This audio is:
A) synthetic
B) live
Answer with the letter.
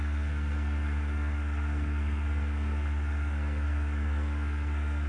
A